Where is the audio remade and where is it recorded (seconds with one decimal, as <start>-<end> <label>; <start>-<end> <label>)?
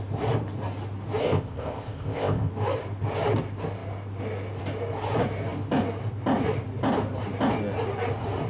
0.0-1.2 recorded; 1.2-2.5 remade; 2.5-8.5 recorded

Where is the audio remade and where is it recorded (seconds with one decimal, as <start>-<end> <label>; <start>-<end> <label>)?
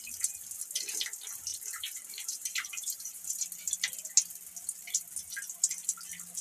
0.0-1.5 recorded; 1.5-3.4 remade; 3.4-6.4 recorded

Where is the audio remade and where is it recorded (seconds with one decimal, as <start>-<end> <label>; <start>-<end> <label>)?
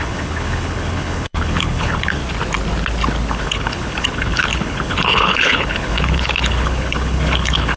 0.0-2.2 remade; 2.2-3.3 recorded; 3.3-7.8 remade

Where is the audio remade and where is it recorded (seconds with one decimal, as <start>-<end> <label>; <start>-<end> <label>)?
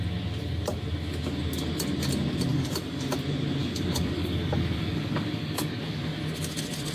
0.0-2.5 recorded; 2.5-3.1 remade; 3.1-3.6 recorded; 3.6-6.2 remade; 6.2-6.9 recorded